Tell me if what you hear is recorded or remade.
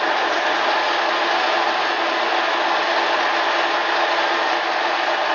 recorded